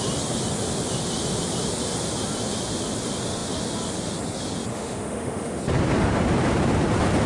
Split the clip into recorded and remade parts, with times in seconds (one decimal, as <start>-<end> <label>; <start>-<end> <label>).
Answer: 0.0-4.7 recorded; 4.7-5.6 remade; 5.6-7.3 recorded